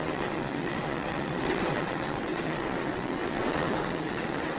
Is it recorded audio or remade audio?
remade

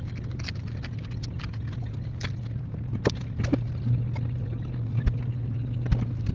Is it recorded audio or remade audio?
recorded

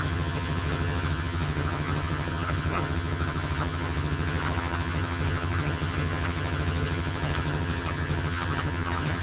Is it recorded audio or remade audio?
remade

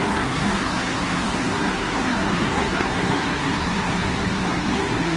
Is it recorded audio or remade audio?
remade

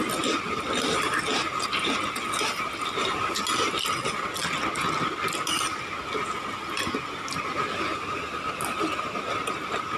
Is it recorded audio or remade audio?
recorded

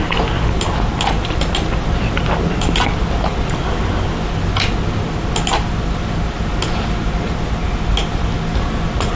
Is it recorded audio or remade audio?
recorded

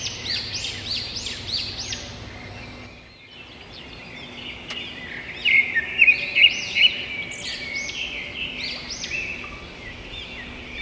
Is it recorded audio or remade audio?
recorded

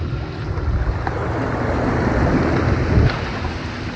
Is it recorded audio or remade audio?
recorded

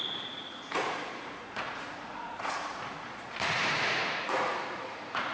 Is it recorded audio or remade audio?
remade